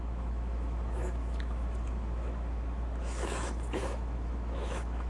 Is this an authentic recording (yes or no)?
no